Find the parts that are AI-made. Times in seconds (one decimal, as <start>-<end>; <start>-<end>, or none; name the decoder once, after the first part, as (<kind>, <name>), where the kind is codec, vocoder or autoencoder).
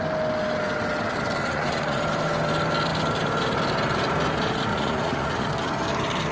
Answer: 1.5-2.0 (vocoder, Vocos); 4.7-5.5